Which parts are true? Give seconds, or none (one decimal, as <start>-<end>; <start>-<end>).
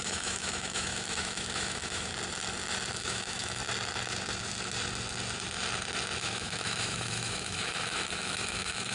2.1-2.9; 3.6-6.2